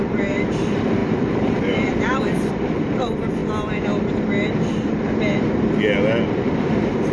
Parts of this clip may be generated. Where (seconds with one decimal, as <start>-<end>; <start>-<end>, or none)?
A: 0.0-3.4